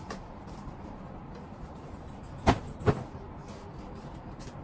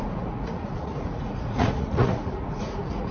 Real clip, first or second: first